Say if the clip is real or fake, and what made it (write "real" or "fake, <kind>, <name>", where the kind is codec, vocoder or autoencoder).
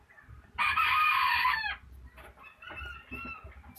real